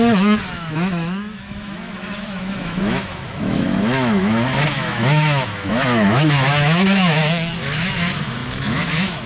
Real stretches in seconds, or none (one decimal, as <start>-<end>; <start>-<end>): none